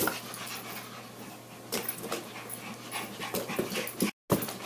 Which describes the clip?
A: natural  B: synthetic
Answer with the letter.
A